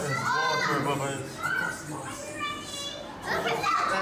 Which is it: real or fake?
real